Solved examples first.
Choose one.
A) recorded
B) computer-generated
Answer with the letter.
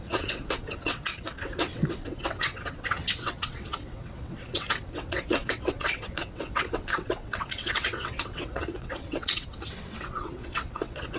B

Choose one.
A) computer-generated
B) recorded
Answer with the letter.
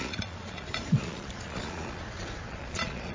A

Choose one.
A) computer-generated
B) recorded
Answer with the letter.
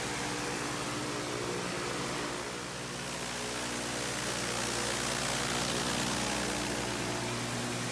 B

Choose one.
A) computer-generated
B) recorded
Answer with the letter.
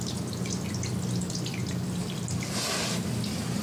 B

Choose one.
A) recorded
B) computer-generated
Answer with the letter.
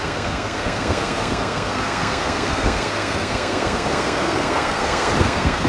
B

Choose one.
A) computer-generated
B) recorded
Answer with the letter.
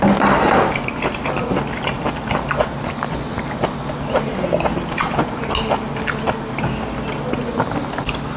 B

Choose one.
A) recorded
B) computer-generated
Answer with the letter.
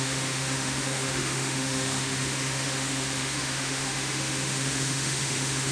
B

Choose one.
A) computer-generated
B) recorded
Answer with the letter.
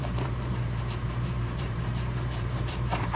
A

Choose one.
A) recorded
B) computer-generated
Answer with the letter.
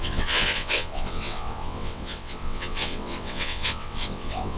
B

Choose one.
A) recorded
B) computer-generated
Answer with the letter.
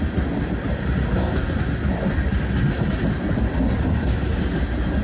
A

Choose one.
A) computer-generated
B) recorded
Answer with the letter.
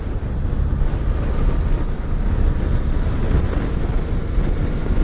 B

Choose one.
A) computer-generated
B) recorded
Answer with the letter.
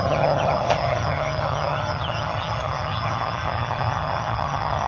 A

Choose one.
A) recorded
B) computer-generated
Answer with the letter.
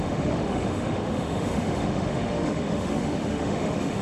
B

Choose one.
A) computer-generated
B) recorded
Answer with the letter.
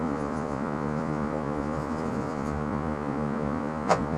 A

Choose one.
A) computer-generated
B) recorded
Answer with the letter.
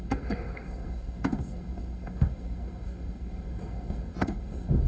A